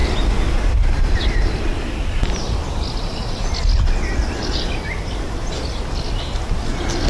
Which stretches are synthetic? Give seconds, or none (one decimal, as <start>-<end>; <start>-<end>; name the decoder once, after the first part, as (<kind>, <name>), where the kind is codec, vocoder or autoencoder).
0.7-1.7 (vocoder, BigVGAN v2); 4.0-5.4